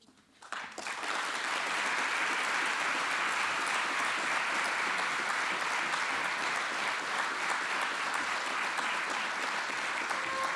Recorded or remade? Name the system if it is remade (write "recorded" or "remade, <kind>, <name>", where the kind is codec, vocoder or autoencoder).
recorded